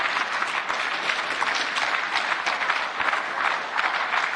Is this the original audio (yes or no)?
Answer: yes